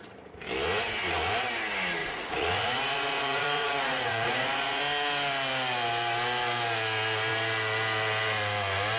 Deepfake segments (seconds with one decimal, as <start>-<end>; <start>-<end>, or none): 2.0-4.8